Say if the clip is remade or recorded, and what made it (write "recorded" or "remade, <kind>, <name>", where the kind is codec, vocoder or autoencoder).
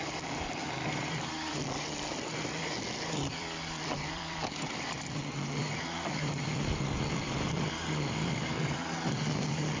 remade, vocoder, BigVGAN v2